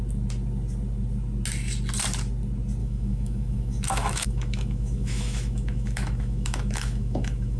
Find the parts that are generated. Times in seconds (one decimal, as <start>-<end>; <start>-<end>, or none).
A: 2.8-7.6